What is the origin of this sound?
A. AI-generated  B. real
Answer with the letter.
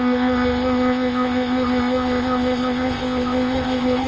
A